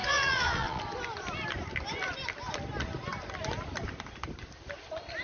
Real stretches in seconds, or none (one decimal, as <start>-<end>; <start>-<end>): 0.8-5.2